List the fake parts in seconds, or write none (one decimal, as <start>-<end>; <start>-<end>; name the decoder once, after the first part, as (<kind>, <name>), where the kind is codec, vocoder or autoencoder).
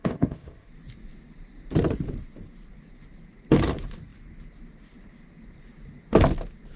0.0-0.7 (codec, ZipCodec)